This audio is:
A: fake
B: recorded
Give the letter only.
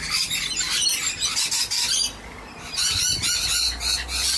B